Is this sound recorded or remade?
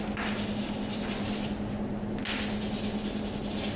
recorded